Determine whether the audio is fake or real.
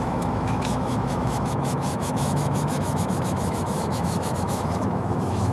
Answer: fake